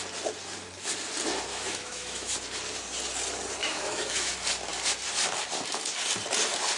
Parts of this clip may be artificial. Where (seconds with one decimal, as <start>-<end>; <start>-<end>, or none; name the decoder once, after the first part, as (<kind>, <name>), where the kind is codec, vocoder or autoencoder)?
1.5-2.3 (autoencoder, DAC-VAE); 3.6-4.3